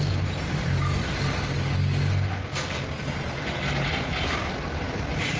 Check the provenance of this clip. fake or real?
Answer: real